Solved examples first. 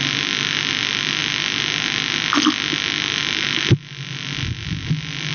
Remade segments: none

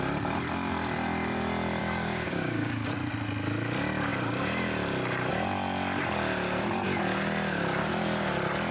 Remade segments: 1.8-2.9 (codec, DAC)

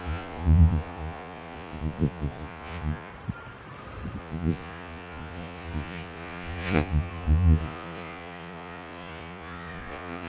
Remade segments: 0.0-3.1 (vocoder, Vocos); 4.2-10.3

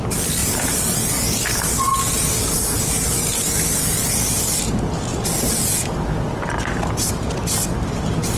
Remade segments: 5.1-5.9 (vocoder, BigVGAN v2)

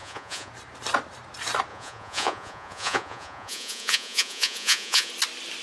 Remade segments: 0.0-0.5 (vocoder, Vocos); 1.7-5.1

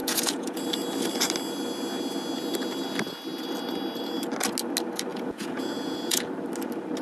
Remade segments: 0.0-0.6 (vocoder, Vocos); 5.1-6.2

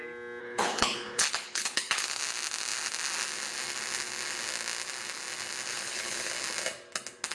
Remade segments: 0.4-2.2 (codec, HILCodec); 5.7-6.3